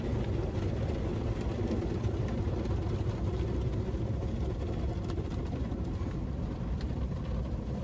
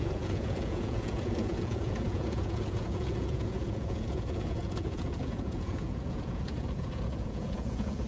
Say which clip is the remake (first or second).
second